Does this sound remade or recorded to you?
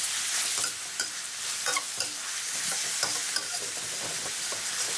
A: recorded